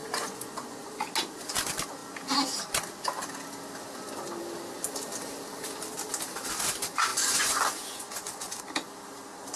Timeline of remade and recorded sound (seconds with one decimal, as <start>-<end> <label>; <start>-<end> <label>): 0.0-0.9 remade; 0.9-7.1 recorded; 7.1-8.6 remade; 8.6-9.6 recorded